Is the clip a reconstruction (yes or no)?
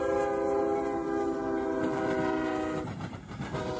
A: yes